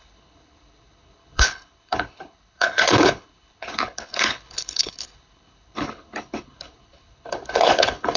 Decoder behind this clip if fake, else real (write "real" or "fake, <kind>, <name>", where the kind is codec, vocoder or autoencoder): fake, codec, HILCodec